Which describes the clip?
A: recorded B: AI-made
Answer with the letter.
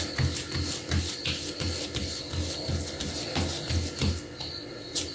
A